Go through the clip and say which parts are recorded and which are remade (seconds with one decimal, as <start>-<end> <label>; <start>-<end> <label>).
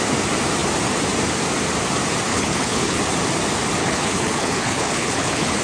0.0-2.3 recorded; 2.3-3.0 remade; 3.0-3.8 recorded; 3.8-5.6 remade